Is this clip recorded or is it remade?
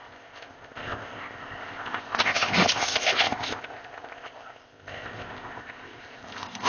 remade